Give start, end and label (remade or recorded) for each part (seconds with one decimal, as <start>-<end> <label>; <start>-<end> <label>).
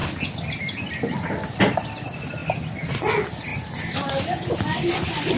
0.0-5.4 recorded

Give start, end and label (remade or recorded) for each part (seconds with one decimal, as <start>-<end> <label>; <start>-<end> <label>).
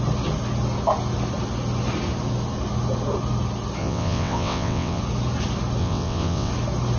0.0-3.8 recorded; 3.8-5.0 remade; 5.0-5.8 recorded; 5.8-6.5 remade; 6.5-7.0 recorded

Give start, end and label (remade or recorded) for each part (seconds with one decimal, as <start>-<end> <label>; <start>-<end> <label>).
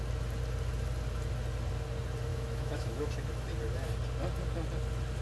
0.0-2.3 recorded; 2.3-3.1 remade; 3.1-5.2 recorded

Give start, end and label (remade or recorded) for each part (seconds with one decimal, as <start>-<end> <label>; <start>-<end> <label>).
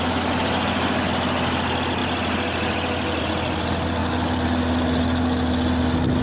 0.0-6.2 recorded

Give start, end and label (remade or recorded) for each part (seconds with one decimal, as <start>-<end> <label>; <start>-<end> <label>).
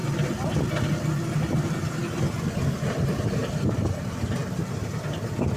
0.0-0.6 remade; 0.6-3.4 recorded; 3.4-3.9 remade; 3.9-5.6 recorded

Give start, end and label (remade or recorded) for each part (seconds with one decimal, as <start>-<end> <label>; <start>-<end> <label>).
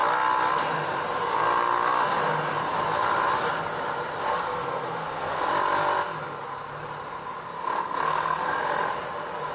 0.0-4.3 recorded; 4.3-5.5 remade; 5.5-7.6 recorded; 7.6-8.6 remade; 8.6-9.5 recorded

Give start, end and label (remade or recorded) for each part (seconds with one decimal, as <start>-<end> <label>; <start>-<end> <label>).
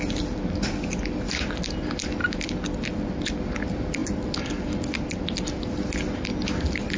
0.0-2.2 recorded; 2.2-3.1 remade; 3.1-4.0 recorded; 4.0-5.2 remade; 5.2-7.0 recorded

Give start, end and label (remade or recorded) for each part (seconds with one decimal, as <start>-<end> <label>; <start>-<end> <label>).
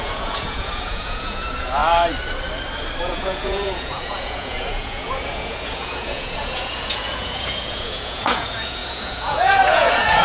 0.0-1.8 remade; 1.8-3.0 recorded; 3.0-10.2 remade